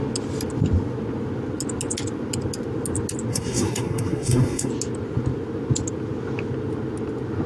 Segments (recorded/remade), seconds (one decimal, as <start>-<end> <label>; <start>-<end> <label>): 0.0-3.3 recorded; 3.3-4.7 remade; 4.7-7.5 recorded